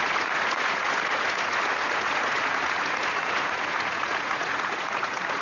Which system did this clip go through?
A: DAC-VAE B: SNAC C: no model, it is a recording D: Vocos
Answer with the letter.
D